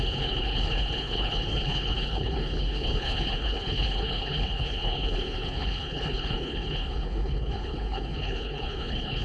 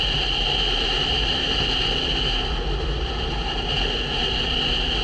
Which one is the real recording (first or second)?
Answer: second